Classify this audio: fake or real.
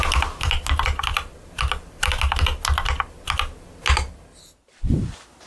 real